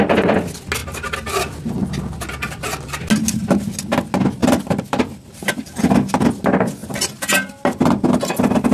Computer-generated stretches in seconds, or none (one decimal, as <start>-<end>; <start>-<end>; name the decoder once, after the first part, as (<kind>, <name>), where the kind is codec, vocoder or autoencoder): 4.4-5.8 (vocoder, BigVGAN v2)